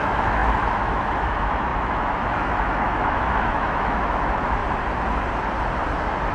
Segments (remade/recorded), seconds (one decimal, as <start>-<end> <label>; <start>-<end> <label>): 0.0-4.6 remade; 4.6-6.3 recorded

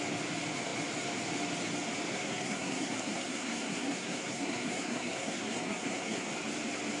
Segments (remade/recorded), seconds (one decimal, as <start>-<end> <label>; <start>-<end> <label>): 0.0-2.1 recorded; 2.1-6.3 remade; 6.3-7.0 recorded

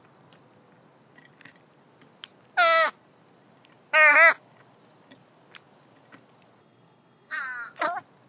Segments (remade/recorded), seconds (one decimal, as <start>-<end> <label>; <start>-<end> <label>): 0.0-6.6 recorded; 6.6-7.4 remade; 7.4-8.3 recorded

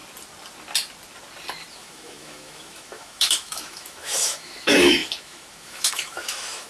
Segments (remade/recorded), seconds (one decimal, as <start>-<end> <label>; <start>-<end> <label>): 0.0-1.7 recorded; 1.7-6.7 remade